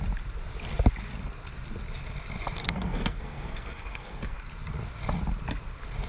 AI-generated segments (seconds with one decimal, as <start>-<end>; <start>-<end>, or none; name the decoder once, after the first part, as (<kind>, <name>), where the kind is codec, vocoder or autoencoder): 2.6-4.4 (codec, SNAC)